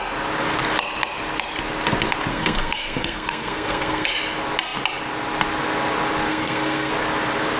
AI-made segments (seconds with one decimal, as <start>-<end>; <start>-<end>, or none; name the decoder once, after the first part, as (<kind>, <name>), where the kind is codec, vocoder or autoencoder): 2.3-4.1 (codec, SNAC); 6.3-6.9